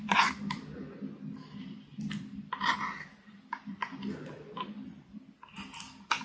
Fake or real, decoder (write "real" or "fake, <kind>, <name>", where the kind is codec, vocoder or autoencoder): real